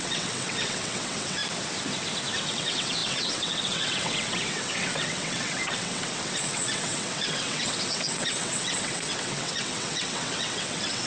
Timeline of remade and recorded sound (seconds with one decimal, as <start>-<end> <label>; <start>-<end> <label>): 0.0-1.4 remade; 1.4-2.5 recorded; 2.5-11.1 remade